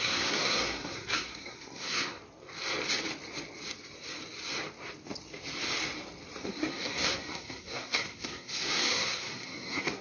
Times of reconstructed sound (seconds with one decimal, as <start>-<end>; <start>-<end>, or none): 0.0-2.2; 6.4-10.0